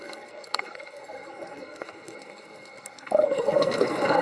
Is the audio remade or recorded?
remade